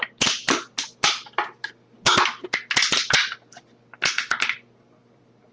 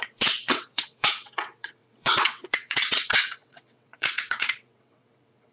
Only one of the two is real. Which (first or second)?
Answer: first